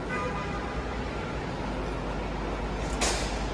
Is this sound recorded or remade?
recorded